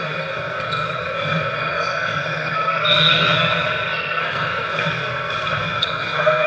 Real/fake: fake